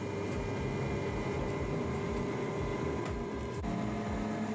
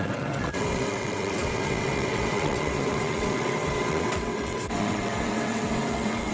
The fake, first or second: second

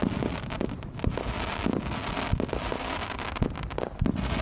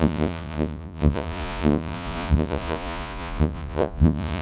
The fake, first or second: second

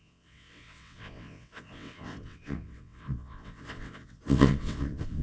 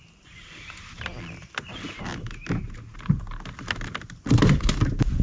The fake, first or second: first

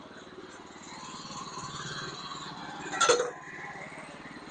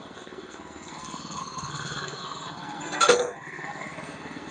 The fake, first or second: second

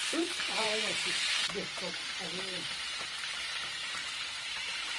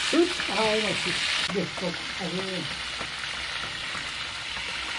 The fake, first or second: first